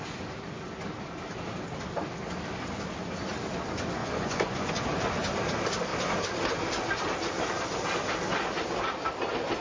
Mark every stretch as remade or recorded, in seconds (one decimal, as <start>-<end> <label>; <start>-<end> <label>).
0.0-4.0 recorded; 4.0-4.7 remade; 4.7-9.6 recorded